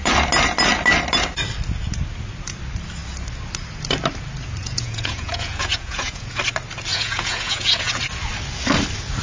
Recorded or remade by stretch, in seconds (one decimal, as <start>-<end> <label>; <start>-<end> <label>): 0.0-4.6 recorded; 4.6-6.4 remade; 6.4-6.9 recorded; 6.9-8.0 remade; 8.0-9.2 recorded